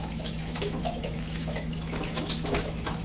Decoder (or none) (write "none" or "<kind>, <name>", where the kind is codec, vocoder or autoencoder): autoencoder, DAC-VAE